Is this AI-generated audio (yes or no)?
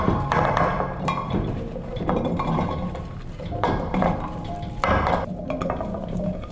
yes